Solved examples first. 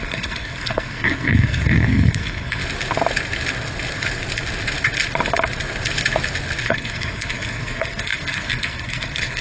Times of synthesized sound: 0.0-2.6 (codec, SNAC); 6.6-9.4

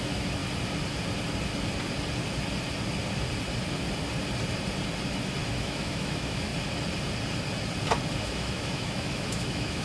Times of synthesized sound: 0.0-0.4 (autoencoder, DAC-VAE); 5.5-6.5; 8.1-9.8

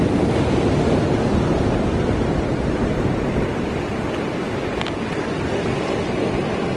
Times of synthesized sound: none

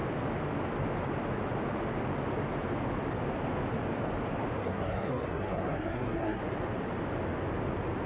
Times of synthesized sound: 4.6-6.4 (codec, SNAC)

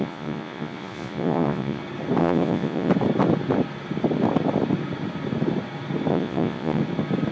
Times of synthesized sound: 0.0-1.8 (vocoder, Vocos); 2.2-2.9; 6.1-6.8

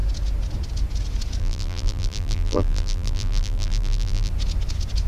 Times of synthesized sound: 1.4-4.3 (vocoder, BigVGAN v2)